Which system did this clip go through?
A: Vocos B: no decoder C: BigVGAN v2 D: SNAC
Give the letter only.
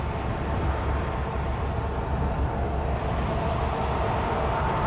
B